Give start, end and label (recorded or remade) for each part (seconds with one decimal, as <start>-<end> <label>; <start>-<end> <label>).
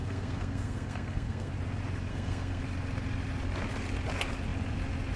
0.0-1.5 remade; 1.5-2.1 recorded; 2.1-2.6 remade; 2.6-5.2 recorded